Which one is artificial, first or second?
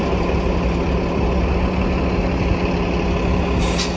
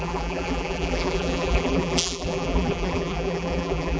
second